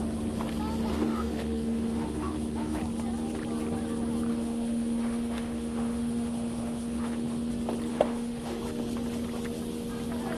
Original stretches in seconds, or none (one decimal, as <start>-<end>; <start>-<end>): 0.0-0.9; 2.8-4.3; 7.5-7.9; 8.6-10.4

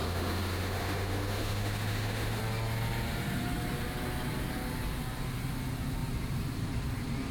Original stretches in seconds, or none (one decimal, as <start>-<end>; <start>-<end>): 2.4-7.3